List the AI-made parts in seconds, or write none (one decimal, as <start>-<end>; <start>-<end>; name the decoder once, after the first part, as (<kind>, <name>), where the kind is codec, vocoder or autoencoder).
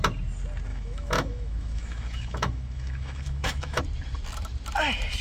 0.7-3.8 (autoencoder, DAC-VAE)